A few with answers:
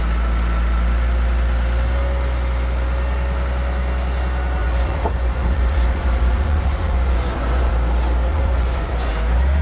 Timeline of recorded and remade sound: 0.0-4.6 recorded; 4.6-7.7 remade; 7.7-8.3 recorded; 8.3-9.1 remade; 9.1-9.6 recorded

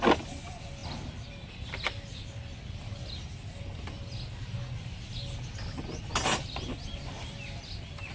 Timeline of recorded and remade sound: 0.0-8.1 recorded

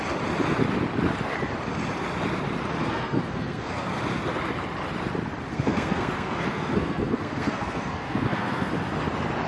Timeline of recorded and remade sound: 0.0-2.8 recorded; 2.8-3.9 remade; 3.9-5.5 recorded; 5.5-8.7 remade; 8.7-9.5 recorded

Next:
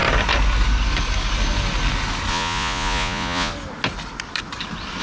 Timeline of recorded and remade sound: 0.0-2.3 recorded; 2.3-3.5 remade; 3.5-5.0 recorded